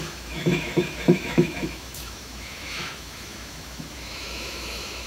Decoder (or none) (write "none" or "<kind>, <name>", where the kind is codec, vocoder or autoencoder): autoencoder, DAC-VAE